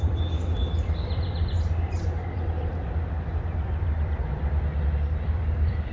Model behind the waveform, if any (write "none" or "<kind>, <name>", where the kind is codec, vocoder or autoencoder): vocoder, BigVGAN v2